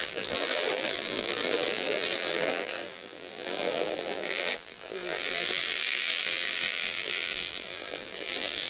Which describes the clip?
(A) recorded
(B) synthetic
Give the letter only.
B